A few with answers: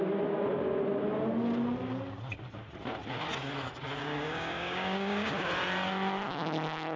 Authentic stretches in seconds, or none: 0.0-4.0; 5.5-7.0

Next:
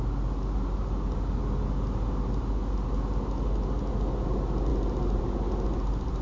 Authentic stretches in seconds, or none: 0.0-6.2